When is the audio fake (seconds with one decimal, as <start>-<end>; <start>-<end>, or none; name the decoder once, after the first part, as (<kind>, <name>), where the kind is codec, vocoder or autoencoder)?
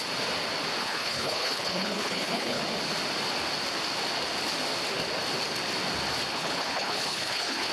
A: 0.8-2.6 (codec, HILCodec); 6.3-7.7